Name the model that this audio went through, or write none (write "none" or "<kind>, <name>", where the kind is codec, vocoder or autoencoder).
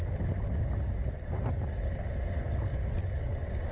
none